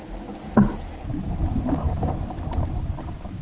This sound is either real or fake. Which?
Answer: real